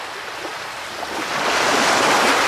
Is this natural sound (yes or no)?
no